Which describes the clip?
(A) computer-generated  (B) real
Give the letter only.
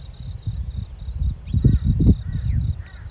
B